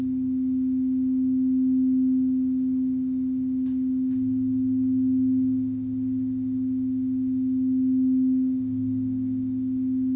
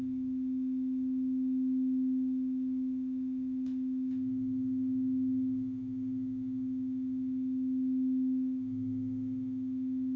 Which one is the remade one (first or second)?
second